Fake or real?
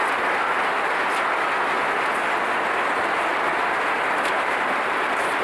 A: real